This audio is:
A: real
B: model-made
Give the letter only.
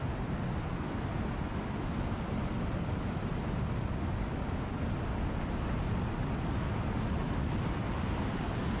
A